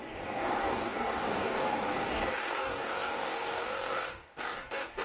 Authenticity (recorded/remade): remade